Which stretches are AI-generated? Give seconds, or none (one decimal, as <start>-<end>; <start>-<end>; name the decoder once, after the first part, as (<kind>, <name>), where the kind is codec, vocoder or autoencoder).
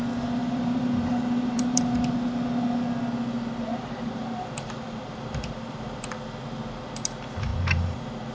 0.4-1.8 (vocoder, BigVGAN v2); 3.7-6.2; 7.5-8.3